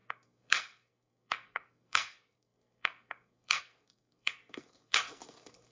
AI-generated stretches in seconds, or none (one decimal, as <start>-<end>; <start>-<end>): 0.0-5.7